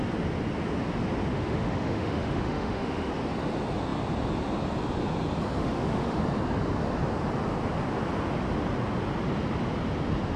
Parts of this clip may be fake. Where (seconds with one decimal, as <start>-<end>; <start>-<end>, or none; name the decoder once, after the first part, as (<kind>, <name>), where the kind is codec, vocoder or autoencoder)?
1.3-3.1 (autoencoder, DAC-VAE); 5.6-6.2